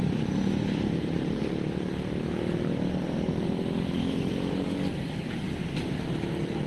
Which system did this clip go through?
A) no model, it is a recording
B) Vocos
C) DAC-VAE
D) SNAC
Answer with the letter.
A